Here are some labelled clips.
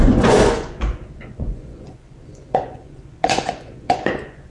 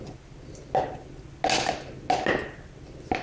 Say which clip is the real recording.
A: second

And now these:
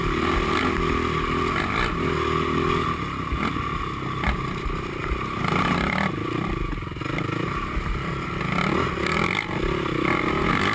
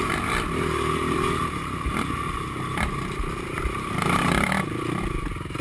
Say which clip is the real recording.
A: first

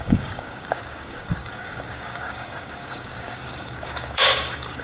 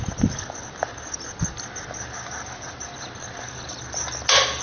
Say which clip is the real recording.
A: second